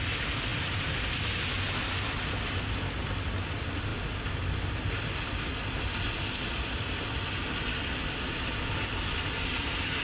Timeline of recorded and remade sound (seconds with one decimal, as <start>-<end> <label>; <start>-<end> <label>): 0.0-10.0 recorded